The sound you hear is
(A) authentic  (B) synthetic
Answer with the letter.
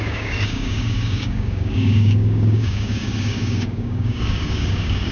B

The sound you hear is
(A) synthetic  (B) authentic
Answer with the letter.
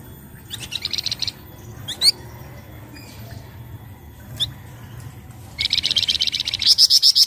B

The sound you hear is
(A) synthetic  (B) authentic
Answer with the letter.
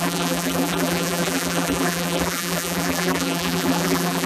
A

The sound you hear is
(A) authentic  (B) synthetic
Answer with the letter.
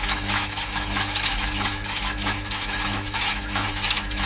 B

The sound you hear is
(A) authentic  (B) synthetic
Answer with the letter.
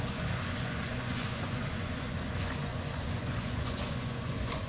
B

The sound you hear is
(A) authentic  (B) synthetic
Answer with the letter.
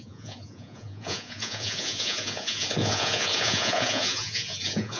B